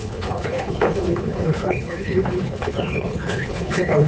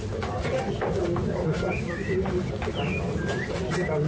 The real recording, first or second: second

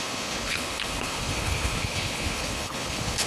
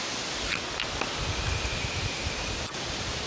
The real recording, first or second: second